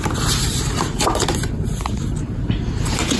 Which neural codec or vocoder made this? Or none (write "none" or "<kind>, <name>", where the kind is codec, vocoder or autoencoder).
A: vocoder, BigVGAN v2